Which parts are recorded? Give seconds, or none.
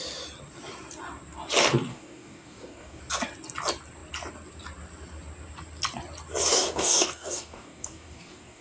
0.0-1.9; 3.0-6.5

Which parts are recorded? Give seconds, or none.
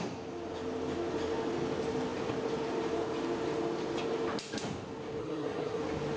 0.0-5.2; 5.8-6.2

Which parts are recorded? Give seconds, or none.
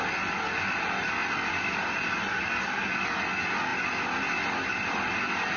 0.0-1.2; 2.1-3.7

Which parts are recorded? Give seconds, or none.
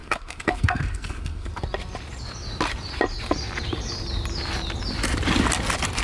1.5-6.0